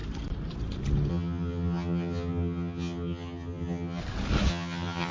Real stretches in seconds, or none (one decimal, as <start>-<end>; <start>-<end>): 0.0-1.1; 4.0-4.5